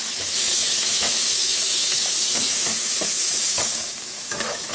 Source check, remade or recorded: remade